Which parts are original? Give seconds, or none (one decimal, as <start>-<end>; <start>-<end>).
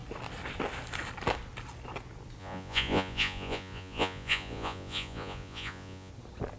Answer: 0.0-2.4; 6.1-6.6